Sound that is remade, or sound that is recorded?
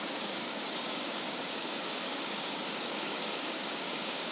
remade